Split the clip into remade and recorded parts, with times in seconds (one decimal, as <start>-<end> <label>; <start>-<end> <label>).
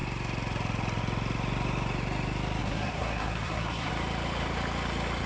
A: 0.0-2.6 recorded; 2.6-3.9 remade; 3.9-5.3 recorded